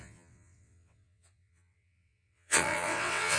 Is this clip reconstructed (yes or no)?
yes